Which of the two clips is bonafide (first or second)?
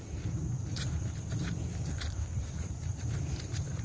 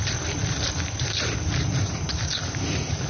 second